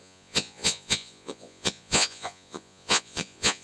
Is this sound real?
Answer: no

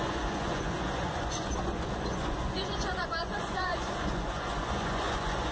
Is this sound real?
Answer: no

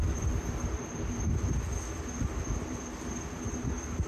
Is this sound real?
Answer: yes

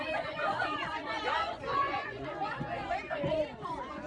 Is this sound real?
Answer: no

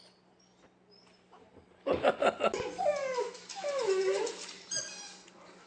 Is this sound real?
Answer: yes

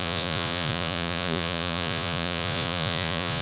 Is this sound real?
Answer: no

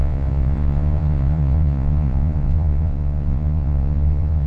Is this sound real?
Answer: no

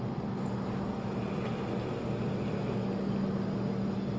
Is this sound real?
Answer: yes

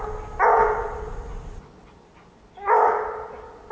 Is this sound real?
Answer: yes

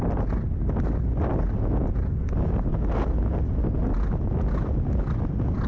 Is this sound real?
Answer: yes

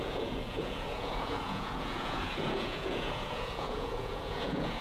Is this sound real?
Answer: no